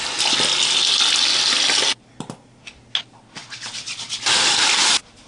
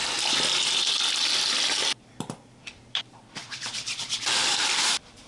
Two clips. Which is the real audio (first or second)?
first